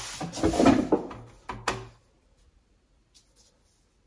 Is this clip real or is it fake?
real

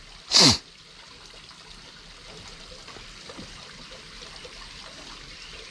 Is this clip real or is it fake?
real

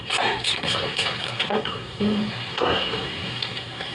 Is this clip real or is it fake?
fake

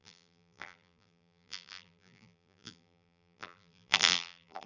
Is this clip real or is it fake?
fake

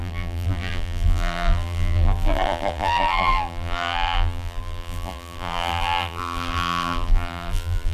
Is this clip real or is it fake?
fake